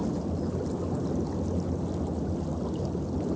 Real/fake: real